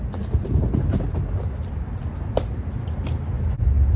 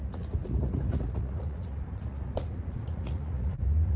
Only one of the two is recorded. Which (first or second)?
first